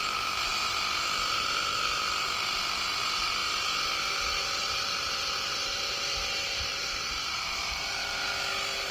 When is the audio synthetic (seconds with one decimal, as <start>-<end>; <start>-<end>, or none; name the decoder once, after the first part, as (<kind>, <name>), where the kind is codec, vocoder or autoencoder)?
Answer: 0.0-8.9 (vocoder, BigVGAN v2)